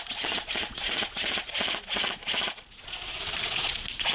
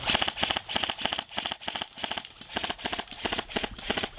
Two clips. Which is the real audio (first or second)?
second